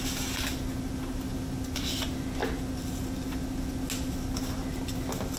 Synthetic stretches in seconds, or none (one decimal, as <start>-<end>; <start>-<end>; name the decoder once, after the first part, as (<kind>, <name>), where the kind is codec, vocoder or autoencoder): none